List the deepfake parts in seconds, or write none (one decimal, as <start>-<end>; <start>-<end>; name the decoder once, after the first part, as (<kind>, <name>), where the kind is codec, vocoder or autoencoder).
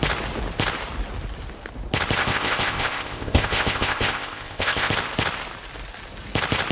2.2-4.9 (codec, ZipCodec)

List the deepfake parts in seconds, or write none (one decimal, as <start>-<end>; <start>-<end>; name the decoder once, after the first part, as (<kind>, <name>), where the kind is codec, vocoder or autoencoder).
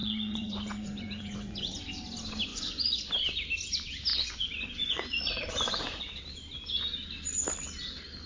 0.0-1.8 (vocoder, Vocos); 2.5-3.1; 4.1-6.2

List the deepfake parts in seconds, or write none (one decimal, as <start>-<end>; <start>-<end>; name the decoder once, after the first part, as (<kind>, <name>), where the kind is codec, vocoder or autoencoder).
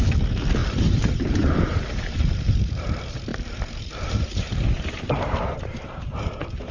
0.6-2.9 (vocoder, BigVGAN v2); 3.3-5.9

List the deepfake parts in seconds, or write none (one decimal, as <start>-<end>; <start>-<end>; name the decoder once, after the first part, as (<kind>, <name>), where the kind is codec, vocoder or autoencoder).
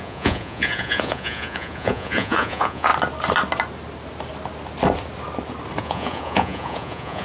0.0-2.9 (vocoder, Vocos); 5.8-7.2